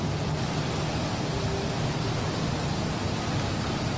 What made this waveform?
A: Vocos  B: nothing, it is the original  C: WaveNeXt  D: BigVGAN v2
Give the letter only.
B